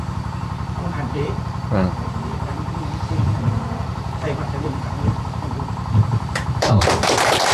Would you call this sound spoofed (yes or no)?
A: yes